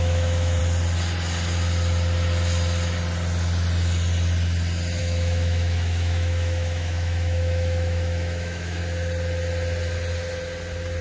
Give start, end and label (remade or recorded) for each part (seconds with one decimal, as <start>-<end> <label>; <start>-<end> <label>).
0.0-0.6 remade; 0.6-5.0 recorded; 5.0-8.8 remade; 8.8-11.0 recorded